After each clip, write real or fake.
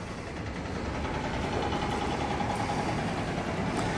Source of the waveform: real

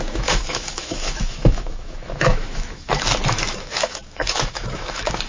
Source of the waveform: fake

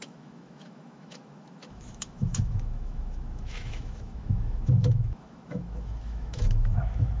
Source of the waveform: fake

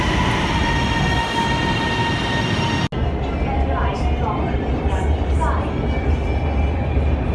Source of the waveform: real